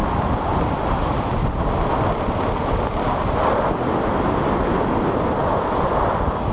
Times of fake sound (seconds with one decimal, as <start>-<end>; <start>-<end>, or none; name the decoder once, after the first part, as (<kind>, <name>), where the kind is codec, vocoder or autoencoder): none